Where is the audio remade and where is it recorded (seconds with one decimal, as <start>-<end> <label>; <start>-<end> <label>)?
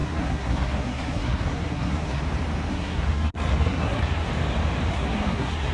0.0-2.2 remade; 2.2-2.7 recorded; 2.7-4.3 remade; 4.3-4.9 recorded; 4.9-5.7 remade